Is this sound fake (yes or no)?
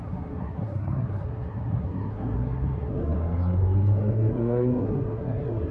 yes